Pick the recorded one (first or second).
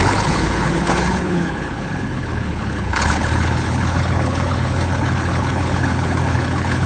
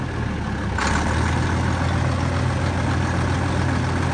second